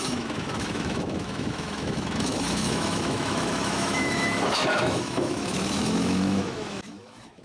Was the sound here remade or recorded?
remade